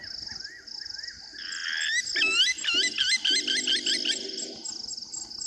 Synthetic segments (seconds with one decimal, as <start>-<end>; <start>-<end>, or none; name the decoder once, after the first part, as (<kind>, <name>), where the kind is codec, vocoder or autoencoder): none